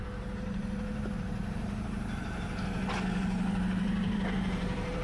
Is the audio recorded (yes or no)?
no